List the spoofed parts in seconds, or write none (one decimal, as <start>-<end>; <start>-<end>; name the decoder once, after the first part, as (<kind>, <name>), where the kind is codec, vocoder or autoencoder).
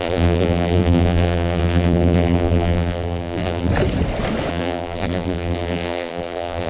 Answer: 0.0-3.7 (vocoder, BigVGAN v2); 4.5-6.7